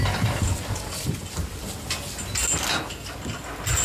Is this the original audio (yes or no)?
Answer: yes